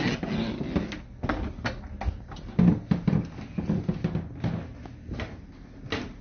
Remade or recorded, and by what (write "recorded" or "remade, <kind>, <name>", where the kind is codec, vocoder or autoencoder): recorded